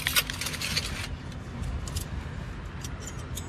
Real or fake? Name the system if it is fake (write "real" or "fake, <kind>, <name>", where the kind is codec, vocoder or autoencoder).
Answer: real